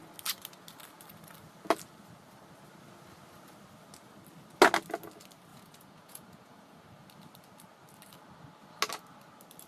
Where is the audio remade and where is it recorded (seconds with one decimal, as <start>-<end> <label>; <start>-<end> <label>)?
0.0-5.5 recorded; 5.5-6.8 remade; 6.8-9.7 recorded